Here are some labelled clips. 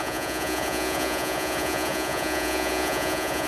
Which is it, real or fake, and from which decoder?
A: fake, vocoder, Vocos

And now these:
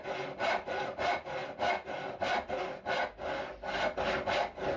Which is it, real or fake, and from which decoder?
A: real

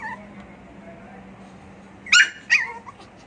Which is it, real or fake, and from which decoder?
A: real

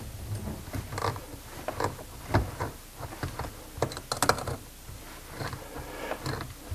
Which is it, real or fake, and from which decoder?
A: real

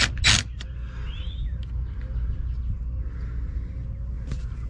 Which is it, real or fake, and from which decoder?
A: real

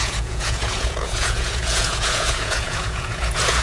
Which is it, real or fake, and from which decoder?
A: fake, vocoder, Vocos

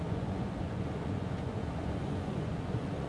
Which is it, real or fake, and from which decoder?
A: fake, vocoder, Vocos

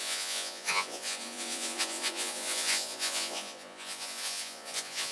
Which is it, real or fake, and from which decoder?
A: fake, vocoder, Vocos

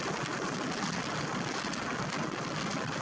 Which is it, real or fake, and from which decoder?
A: real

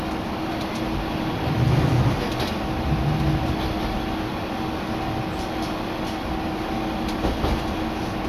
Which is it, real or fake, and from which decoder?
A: real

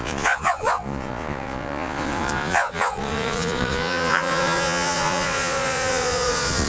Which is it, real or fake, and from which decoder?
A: fake, vocoder, Vocos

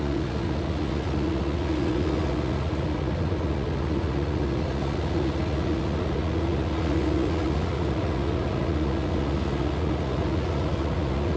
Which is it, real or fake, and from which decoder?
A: fake, vocoder, Vocos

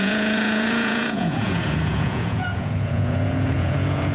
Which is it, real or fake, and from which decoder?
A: fake, vocoder, Vocos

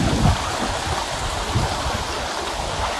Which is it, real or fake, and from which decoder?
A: real